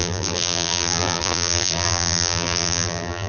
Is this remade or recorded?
remade